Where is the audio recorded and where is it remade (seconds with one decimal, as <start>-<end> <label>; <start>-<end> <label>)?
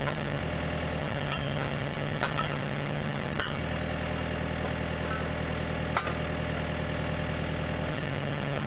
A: 0.0-0.4 remade; 0.4-1.0 recorded; 1.0-3.6 remade; 3.6-7.9 recorded; 7.9-8.7 remade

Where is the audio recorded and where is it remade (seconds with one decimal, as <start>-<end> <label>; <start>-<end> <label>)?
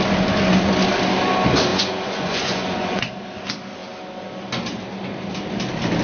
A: 0.0-1.7 recorded; 1.7-3.1 remade; 3.1-6.0 recorded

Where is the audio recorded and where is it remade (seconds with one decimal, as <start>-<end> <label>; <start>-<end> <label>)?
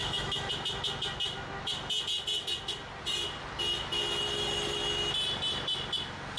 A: 0.0-0.5 remade; 0.5-6.4 recorded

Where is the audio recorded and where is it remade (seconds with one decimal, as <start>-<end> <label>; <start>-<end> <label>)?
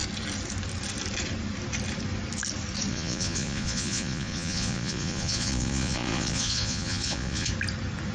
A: 0.0-2.9 recorded; 2.9-7.5 remade; 7.5-8.1 recorded